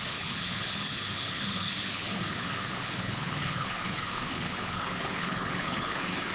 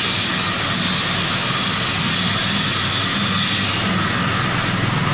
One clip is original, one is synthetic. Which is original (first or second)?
second